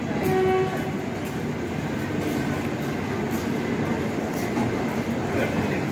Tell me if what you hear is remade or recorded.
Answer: recorded